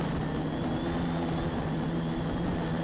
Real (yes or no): yes